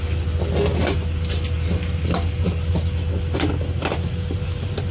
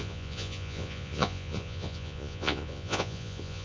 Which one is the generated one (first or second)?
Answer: second